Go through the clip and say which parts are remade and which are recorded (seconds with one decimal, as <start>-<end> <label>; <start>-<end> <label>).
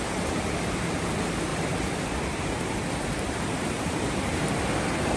0.0-1.5 recorded; 1.5-4.6 remade; 4.6-5.2 recorded